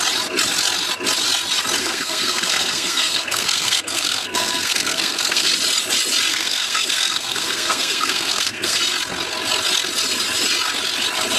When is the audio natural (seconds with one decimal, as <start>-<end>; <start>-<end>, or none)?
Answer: 0.0-1.8; 5.5-6.3; 8.8-11.4